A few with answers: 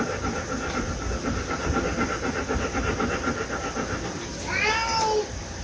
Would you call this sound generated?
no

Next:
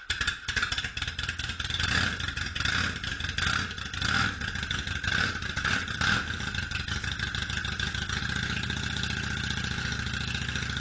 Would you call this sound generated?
no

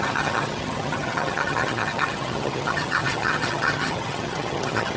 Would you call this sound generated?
yes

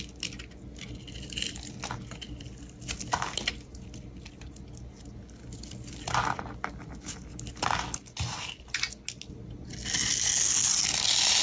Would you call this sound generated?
no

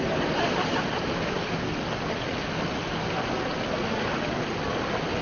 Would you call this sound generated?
no